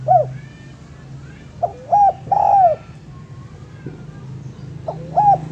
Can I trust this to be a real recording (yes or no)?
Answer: yes